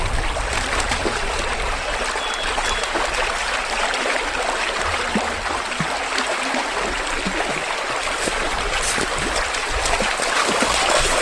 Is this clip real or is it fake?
real